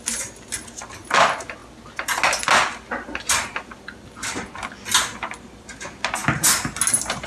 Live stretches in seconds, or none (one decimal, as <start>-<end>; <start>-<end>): 0.0-7.3